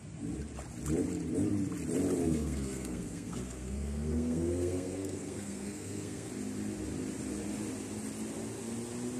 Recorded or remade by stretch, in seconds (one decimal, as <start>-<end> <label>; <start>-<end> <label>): 0.0-2.2 recorded; 2.2-6.3 remade; 6.3-9.2 recorded